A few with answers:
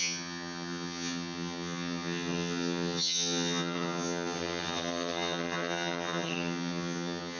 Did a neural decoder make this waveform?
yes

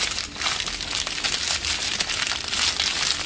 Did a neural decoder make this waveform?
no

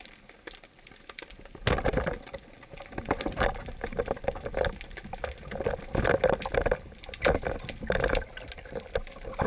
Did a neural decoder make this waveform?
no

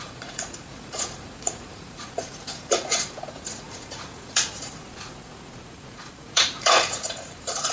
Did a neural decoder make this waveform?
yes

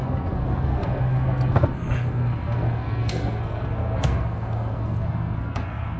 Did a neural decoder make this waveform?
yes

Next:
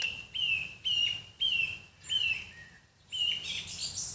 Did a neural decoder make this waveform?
no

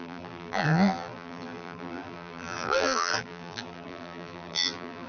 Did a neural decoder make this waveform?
yes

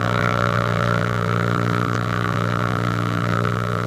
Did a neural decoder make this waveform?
yes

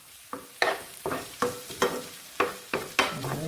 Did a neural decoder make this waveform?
yes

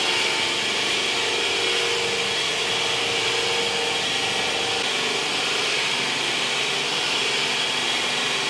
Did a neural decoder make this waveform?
no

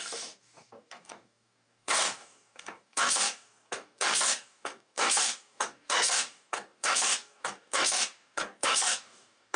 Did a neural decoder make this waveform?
yes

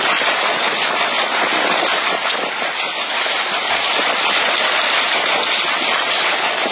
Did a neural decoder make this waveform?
no